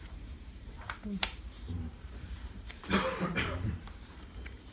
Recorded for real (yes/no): no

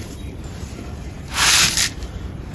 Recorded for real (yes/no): no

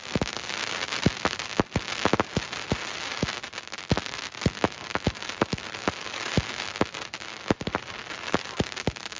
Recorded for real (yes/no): yes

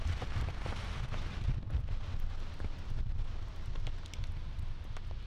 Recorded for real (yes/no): yes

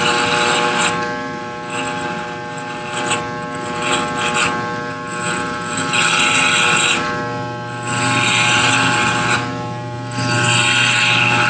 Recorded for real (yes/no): yes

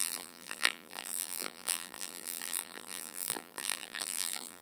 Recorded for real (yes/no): no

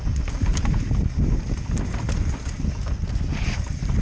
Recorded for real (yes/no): yes